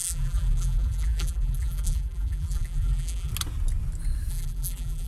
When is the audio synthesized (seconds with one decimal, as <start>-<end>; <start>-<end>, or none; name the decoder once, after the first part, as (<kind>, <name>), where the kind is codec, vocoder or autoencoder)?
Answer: 0.0-3.3 (vocoder, BigVGAN v2); 4.3-5.1